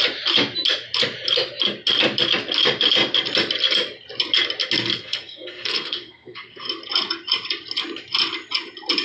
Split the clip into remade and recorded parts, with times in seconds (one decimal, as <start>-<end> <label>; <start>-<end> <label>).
0.0-4.9 recorded; 4.9-6.7 remade; 6.7-9.0 recorded